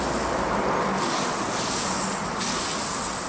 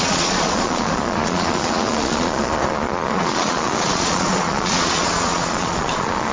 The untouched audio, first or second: first